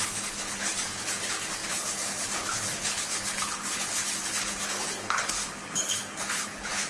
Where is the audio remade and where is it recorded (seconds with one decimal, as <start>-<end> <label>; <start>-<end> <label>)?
0.0-6.9 remade